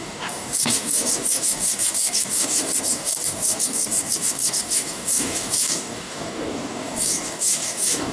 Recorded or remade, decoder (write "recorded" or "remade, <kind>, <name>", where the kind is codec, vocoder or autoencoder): remade, codec, DAC